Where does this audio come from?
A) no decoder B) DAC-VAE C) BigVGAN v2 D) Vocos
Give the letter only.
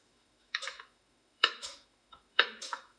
B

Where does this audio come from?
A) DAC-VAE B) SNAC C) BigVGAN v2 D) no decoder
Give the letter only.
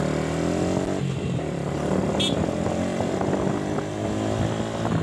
D